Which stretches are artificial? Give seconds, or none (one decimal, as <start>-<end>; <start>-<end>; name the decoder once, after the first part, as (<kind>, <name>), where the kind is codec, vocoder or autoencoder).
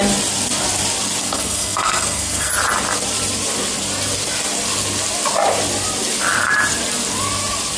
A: 1.2-2.5 (codec, SNAC)